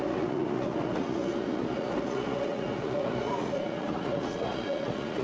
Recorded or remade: remade